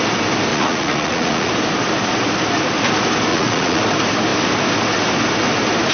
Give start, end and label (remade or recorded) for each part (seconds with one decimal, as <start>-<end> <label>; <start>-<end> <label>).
0.0-0.5 recorded; 0.5-1.5 remade; 1.5-3.3 recorded; 3.3-3.8 remade; 3.8-5.9 recorded